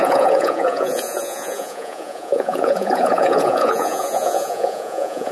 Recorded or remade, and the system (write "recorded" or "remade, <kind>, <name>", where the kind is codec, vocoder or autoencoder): remade, vocoder, Vocos